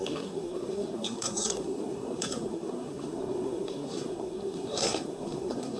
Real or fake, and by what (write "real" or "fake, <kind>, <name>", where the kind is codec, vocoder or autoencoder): fake, codec, SNAC